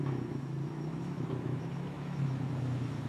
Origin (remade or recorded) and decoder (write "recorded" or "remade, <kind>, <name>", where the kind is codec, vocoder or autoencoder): remade, autoencoder, DAC-VAE